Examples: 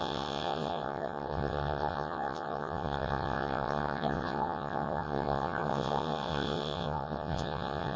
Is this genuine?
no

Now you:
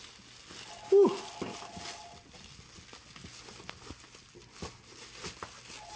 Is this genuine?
yes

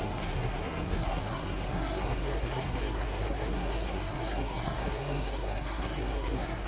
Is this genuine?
no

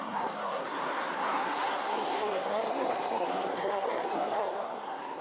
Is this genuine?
no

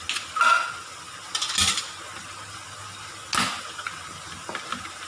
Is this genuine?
yes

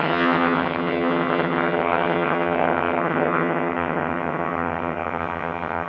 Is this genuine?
no